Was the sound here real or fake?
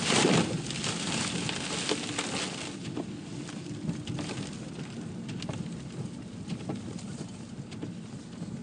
real